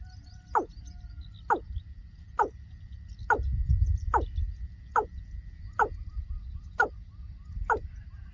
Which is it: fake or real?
real